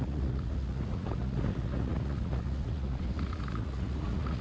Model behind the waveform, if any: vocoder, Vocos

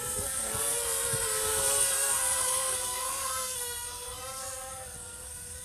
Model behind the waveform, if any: codec, SNAC